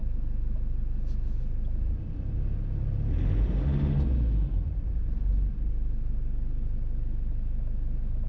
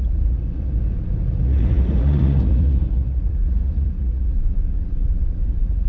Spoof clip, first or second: second